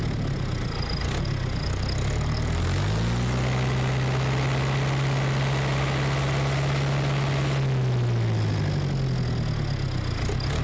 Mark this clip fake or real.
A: real